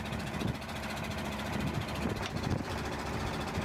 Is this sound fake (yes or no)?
yes